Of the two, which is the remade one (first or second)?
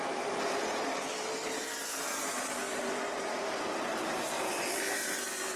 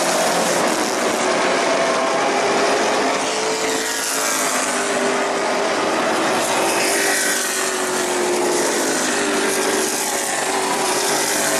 first